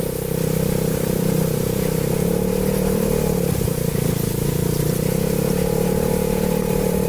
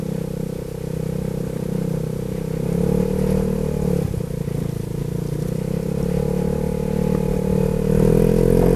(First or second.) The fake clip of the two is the first